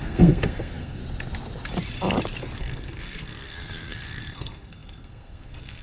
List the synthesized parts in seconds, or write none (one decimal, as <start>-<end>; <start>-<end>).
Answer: 0.0-1.0; 2.6-5.8